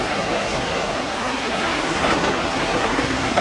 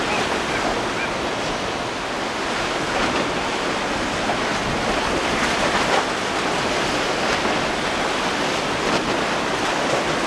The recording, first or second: second